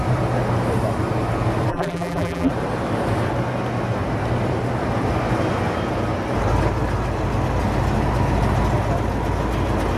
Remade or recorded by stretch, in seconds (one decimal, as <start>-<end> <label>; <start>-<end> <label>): 0.0-1.7 recorded; 1.7-2.5 remade; 2.5-10.0 recorded